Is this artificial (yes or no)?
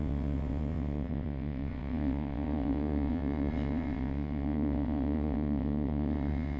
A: yes